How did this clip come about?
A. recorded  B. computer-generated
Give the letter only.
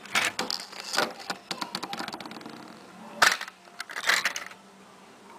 A